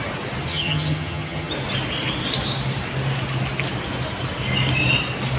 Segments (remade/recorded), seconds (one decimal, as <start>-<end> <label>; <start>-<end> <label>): 0.0-0.5 recorded; 0.5-1.5 remade; 1.5-5.4 recorded